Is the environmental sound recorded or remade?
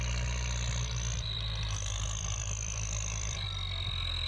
remade